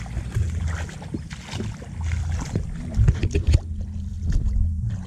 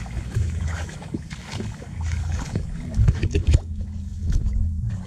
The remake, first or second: second